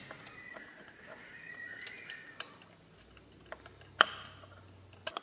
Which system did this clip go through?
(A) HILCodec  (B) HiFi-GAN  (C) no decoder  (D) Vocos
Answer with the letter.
C